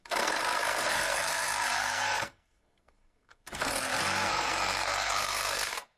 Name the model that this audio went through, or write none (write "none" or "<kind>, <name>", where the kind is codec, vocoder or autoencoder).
codec, SNAC